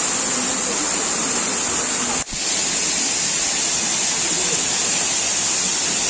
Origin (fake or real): real